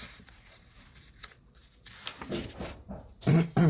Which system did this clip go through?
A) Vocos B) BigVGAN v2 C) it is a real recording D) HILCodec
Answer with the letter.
B